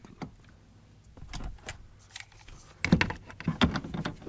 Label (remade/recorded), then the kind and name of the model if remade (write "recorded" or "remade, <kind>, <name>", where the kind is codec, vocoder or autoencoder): recorded